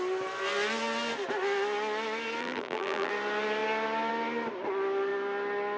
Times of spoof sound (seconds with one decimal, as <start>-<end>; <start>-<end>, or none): 2.4-3.1